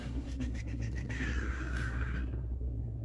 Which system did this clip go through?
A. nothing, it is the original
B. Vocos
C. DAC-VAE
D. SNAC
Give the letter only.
D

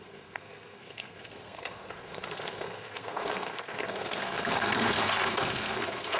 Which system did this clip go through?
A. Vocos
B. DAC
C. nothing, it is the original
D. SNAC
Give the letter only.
D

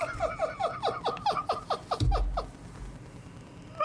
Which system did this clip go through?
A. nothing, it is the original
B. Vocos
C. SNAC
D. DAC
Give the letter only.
A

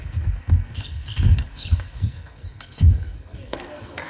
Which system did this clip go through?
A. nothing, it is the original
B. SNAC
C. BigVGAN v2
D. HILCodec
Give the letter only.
B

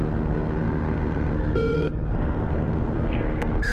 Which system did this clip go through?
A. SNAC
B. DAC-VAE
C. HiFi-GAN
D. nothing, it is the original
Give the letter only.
A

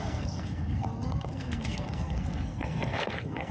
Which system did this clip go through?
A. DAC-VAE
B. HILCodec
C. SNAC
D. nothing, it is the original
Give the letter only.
C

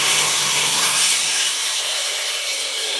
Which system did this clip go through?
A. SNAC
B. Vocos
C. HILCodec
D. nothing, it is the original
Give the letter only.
A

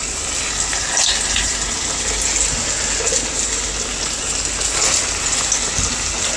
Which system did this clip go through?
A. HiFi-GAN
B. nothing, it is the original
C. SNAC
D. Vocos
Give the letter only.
B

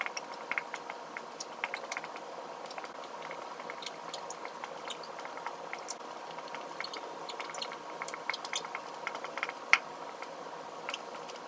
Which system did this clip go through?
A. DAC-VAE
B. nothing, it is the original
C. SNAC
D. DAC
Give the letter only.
B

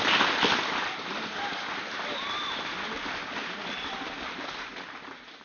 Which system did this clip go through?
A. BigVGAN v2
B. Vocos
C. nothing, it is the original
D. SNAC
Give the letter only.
C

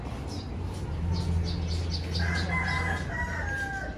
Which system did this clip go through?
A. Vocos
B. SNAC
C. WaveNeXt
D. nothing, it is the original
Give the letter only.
D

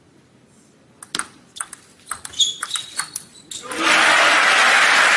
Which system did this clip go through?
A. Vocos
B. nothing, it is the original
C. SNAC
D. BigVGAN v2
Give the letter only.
B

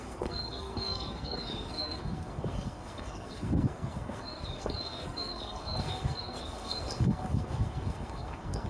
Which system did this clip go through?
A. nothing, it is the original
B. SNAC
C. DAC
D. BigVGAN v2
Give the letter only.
B